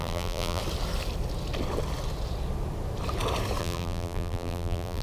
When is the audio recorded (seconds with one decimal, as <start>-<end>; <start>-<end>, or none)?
0.6-3.6